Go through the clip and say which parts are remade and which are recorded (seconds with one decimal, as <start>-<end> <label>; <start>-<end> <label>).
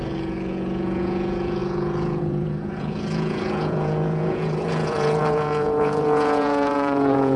0.0-7.4 remade